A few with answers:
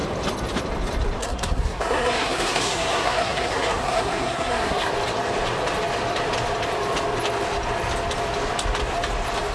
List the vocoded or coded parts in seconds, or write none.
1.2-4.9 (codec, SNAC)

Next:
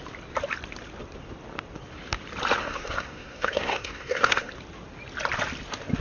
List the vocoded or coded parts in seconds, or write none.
2.6-4.5 (codec, SNAC)

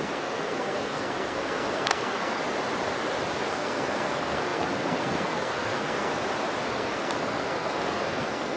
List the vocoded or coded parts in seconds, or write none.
0.0-2.4 (codec, SNAC); 3.5-6.1; 6.7-8.6

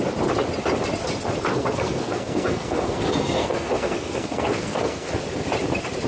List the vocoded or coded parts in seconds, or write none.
1.5-5.1 (codec, SNAC)

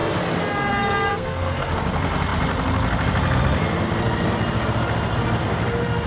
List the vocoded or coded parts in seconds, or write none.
1.1-1.7 (codec, SNAC)

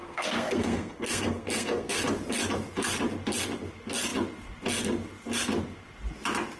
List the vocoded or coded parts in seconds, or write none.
0.0-1.9 (codec, SNAC)

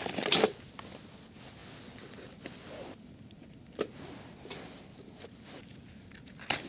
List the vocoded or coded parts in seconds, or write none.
none

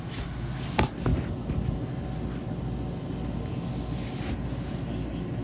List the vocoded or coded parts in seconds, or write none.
none